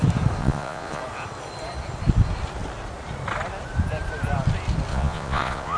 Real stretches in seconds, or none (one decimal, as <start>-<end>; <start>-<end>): 0.0-0.4; 1.0-4.9